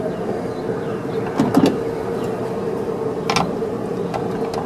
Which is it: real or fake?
real